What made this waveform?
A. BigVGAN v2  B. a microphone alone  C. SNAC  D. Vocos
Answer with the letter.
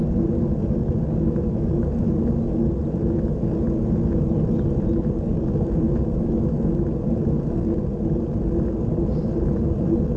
B